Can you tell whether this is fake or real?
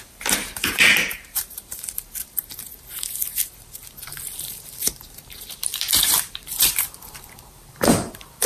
fake